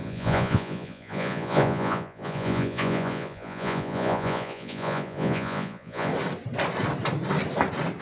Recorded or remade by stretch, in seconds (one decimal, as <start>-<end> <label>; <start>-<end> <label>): 0.0-6.1 remade; 6.1-8.0 recorded